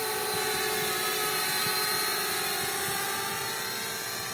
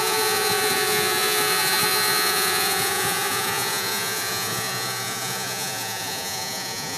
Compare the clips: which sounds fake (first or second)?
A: second